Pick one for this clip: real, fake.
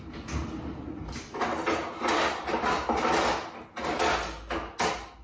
real